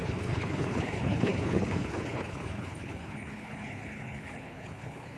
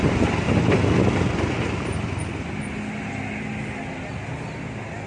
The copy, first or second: first